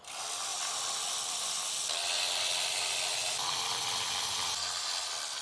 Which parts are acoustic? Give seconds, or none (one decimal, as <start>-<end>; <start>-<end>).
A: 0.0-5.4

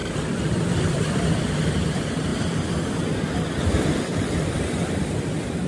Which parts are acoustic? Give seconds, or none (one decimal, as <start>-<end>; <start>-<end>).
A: 1.4-5.7

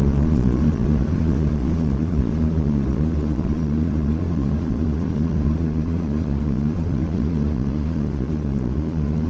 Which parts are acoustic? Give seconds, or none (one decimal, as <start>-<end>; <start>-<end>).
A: none

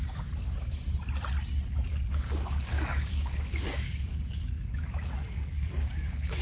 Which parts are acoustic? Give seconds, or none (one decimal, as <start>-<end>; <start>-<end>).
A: 0.9-2.1

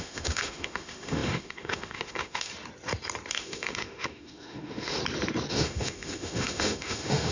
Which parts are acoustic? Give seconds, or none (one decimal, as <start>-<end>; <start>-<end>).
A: 2.5-3.3; 5.0-5.5

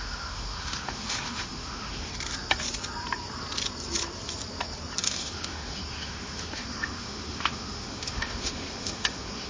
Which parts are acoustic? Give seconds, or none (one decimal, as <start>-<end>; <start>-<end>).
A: 2.1-5.0

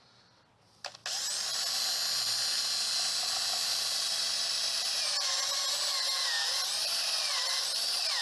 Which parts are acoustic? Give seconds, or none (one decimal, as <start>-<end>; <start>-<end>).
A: 0.0-8.2